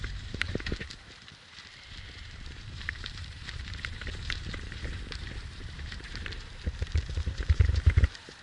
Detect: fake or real fake